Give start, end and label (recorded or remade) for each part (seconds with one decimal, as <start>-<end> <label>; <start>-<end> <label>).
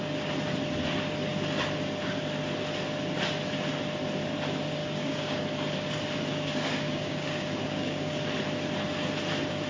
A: 0.0-4.8 recorded; 4.8-5.4 remade; 5.4-6.3 recorded; 6.3-8.1 remade; 8.1-9.7 recorded